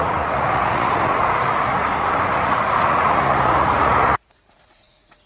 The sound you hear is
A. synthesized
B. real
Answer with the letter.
A